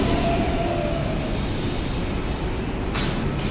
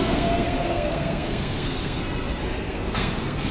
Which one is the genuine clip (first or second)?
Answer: first